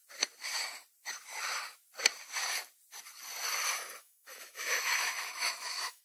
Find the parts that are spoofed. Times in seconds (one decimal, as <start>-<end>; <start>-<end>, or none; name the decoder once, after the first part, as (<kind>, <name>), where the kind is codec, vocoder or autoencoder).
4.0-6.0 (autoencoder, DAC-VAE)